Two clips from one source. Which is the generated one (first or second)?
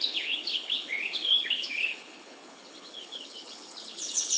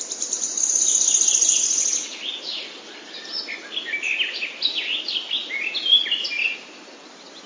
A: first